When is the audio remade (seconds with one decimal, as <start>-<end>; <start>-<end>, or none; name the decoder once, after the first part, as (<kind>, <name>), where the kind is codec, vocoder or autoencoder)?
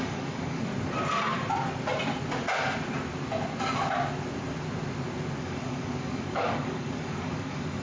0.0-0.7 (codec, DAC); 5.4-7.8